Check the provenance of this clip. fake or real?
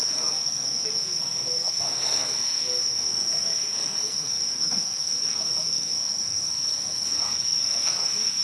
fake